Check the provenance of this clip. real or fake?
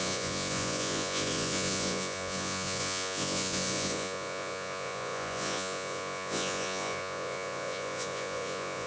fake